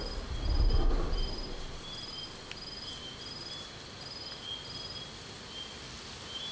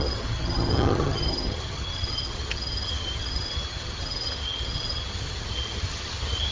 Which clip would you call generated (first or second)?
second